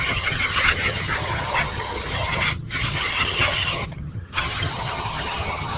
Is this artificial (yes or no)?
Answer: yes